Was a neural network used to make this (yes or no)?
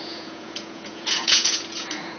yes